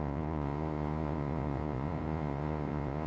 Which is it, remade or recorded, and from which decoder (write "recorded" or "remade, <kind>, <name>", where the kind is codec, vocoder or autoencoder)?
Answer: remade, vocoder, Vocos